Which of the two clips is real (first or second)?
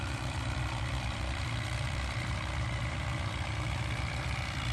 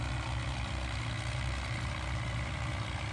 second